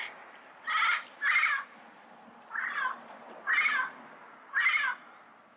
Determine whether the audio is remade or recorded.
recorded